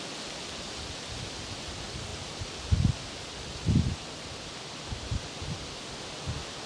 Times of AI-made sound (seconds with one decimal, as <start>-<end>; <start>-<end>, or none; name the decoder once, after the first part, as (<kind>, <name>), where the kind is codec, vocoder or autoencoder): none